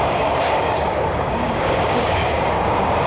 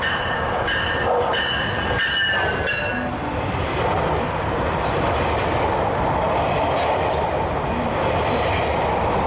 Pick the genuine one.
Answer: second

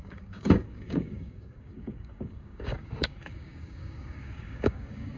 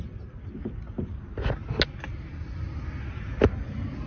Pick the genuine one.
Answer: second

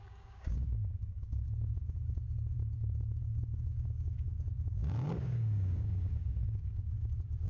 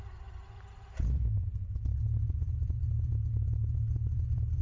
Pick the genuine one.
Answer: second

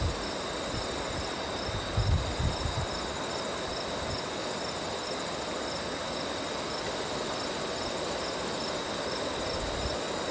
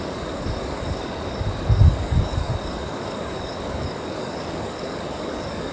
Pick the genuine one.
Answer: first